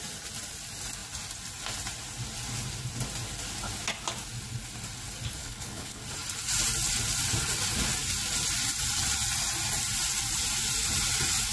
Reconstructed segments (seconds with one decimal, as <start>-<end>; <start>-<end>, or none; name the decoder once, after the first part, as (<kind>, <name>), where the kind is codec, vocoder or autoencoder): 5.4-6.0 (codec, HILCodec)